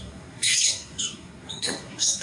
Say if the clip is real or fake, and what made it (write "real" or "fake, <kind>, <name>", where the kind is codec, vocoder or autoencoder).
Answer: fake, codec, SNAC